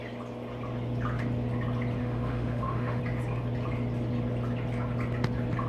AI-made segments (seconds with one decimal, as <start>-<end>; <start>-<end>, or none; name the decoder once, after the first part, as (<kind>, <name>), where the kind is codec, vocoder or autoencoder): 2.0-3.0 (autoencoder, DAC-VAE)